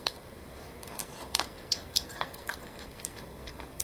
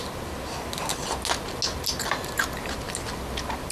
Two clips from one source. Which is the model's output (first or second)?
first